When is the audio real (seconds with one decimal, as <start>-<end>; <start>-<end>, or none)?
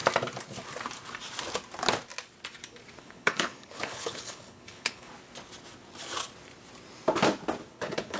0.0-3.0; 5.1-7.7